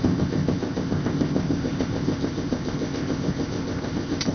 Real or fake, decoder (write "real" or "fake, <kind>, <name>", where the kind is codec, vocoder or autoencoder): fake, codec, ZipCodec